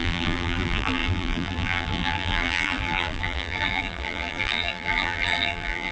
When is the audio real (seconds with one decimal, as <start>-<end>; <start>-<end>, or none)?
none